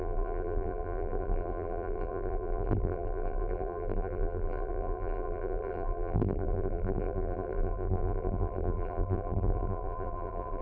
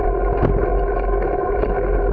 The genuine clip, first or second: second